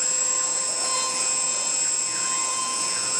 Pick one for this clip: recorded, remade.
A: remade